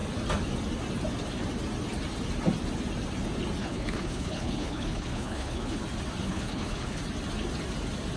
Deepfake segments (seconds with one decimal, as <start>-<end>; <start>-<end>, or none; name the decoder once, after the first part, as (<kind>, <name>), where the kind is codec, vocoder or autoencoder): 3.6-5.8 (codec, HILCodec); 6.2-7.0